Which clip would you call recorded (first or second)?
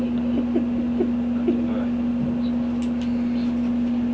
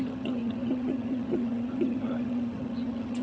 first